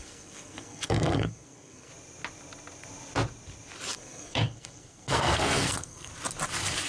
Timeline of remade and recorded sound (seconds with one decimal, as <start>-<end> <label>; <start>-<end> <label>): 0.0-1.9 remade; 1.9-3.9 recorded; 3.9-6.1 remade; 6.1-6.9 recorded